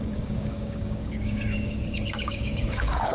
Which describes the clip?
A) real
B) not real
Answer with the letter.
B